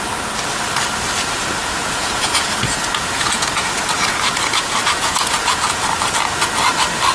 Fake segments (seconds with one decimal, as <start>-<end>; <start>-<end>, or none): 1.6-5.9